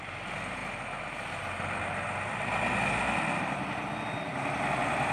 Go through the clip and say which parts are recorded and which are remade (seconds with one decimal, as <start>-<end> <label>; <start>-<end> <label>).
0.0-5.1 recorded